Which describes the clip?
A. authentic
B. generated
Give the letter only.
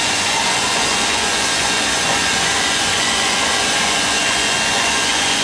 B